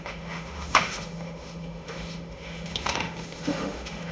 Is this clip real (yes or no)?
no